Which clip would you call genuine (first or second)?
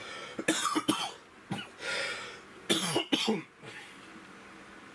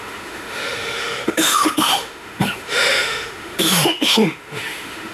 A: first